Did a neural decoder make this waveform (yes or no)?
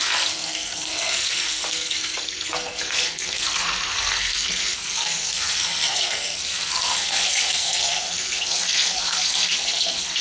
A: yes